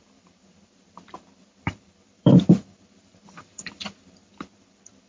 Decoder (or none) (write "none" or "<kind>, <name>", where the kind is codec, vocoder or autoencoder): vocoder, BigVGAN v2